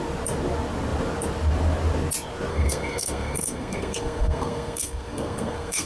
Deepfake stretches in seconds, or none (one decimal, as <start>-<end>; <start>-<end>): 2.5-5.9